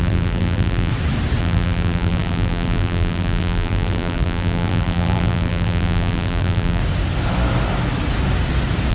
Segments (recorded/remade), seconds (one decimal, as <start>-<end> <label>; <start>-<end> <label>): 0.0-0.9 remade; 0.9-1.4 recorded; 1.4-6.8 remade; 6.8-8.9 recorded